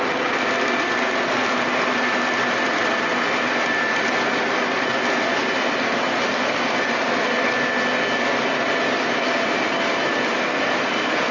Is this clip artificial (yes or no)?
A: no